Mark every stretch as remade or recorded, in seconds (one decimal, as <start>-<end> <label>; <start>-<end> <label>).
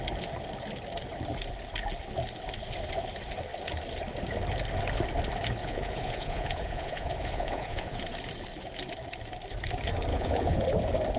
0.0-5.6 recorded; 5.6-8.0 remade; 8.0-10.1 recorded; 10.1-10.6 remade; 10.6-11.2 recorded